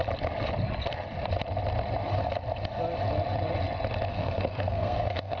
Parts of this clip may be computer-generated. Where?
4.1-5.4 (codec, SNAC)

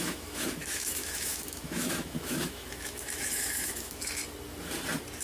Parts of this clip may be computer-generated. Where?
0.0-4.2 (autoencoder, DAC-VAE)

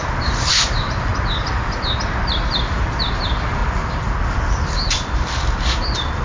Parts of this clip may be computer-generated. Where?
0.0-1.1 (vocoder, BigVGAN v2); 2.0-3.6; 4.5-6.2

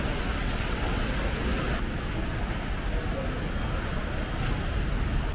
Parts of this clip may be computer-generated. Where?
0.4-1.0 (vocoder, WaveNeXt)